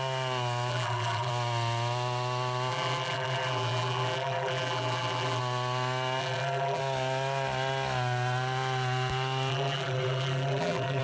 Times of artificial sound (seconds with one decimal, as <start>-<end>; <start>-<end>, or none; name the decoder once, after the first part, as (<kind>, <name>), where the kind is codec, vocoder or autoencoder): 0.7-1.3 (vocoder, BigVGAN v2); 2.7-5.4; 6.2-6.8; 9.5-11.0